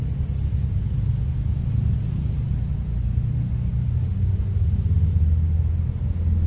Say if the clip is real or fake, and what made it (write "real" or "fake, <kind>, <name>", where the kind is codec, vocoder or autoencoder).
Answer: real